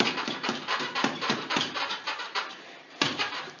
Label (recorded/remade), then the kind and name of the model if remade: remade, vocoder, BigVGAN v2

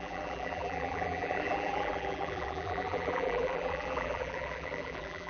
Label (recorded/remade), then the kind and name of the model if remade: remade, vocoder, BigVGAN v2